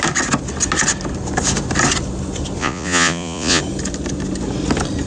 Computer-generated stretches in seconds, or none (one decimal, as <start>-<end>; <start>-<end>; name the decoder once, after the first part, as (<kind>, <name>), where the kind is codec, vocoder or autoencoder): 2.6-3.6 (vocoder, Vocos)